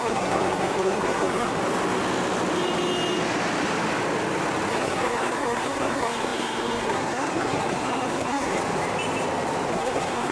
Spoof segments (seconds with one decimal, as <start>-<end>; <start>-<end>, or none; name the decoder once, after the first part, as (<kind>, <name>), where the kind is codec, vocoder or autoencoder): 0.0-1.6 (codec, SNAC); 4.7-8.6; 9.7-10.3